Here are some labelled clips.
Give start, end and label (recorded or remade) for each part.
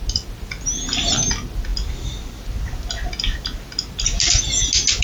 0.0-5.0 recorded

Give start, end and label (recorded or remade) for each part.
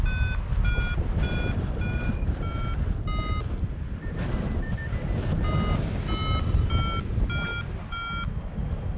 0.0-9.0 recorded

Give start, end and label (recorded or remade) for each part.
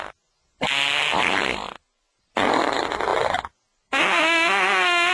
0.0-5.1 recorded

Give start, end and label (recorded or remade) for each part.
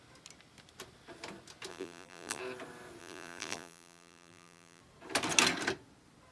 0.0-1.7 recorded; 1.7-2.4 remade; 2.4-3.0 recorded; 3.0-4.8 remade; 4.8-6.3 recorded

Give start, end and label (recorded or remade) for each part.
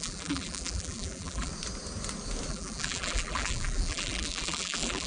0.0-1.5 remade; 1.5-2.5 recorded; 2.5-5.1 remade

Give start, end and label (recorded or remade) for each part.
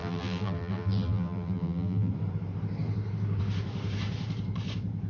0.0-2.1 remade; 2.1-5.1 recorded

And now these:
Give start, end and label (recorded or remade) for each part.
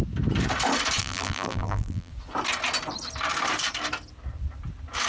0.0-1.0 recorded; 1.0-2.1 remade; 2.1-5.1 recorded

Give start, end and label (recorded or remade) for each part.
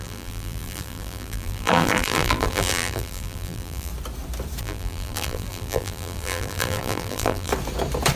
0.0-3.9 remade; 3.9-4.6 recorded; 4.6-7.5 remade; 7.5-8.2 recorded